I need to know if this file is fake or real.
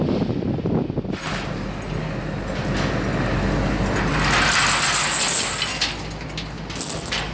real